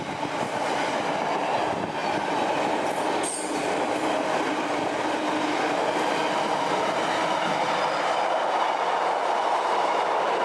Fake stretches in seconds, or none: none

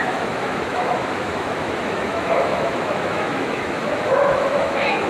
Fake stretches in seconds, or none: 0.0-5.1

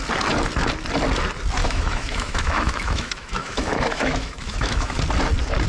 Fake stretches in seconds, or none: 1.6-5.0

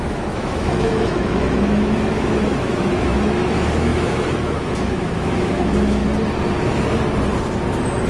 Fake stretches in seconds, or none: 0.0-6.0